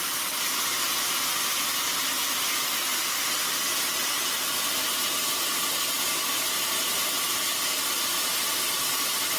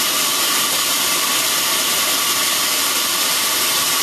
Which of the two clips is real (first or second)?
first